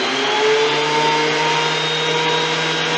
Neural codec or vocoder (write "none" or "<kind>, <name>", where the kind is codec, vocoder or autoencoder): none